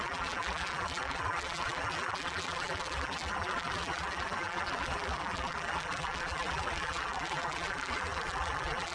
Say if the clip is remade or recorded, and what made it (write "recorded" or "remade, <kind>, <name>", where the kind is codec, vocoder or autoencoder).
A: remade, vocoder, BigVGAN v2